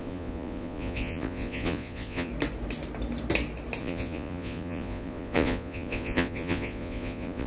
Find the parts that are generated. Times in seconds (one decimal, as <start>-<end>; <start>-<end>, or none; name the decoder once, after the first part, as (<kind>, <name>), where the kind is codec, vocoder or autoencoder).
0.0-2.3 (vocoder, Vocos); 3.8-7.5